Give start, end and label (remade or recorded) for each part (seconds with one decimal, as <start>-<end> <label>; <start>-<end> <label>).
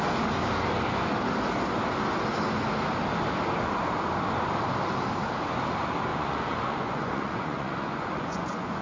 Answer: 0.0-6.1 recorded; 6.1-8.8 remade